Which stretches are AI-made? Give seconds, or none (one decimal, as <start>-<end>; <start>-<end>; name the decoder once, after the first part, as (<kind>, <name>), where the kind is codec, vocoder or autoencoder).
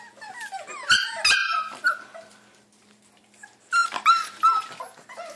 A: none